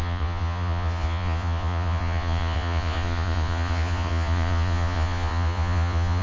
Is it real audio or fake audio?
fake